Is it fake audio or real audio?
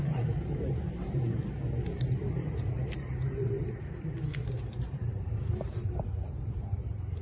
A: fake